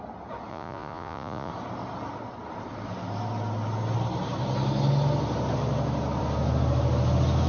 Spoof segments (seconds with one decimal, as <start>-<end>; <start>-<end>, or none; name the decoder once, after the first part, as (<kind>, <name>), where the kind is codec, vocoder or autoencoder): 0.5-1.5 (vocoder, Vocos)